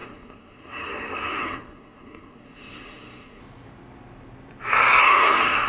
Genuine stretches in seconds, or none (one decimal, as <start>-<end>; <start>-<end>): 3.4-5.0